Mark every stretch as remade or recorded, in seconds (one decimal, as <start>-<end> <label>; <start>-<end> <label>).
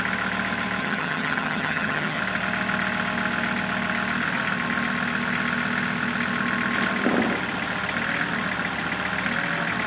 0.0-0.8 recorded; 0.8-2.2 remade; 2.2-9.9 recorded